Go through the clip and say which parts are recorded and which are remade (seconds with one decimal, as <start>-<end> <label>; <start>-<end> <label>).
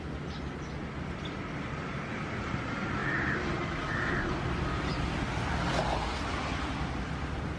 0.0-7.6 recorded